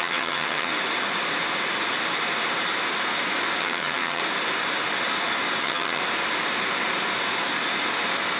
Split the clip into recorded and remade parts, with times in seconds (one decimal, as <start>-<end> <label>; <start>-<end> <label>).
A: 0.0-0.7 remade; 0.7-3.6 recorded; 3.6-4.2 remade; 4.2-5.6 recorded; 5.6-6.0 remade; 6.0-8.4 recorded

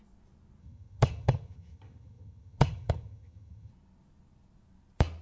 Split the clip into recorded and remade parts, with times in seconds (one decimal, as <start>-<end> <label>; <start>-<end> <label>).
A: 0.0-0.6 recorded; 0.6-3.7 remade; 3.7-5.2 recorded

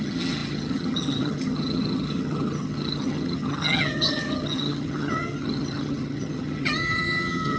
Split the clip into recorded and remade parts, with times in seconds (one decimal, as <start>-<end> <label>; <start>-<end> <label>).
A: 0.0-7.6 remade

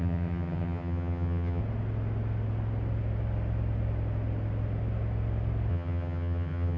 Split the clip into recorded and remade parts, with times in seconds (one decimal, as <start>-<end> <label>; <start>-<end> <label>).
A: 0.0-1.6 remade; 1.6-5.7 recorded; 5.7-6.8 remade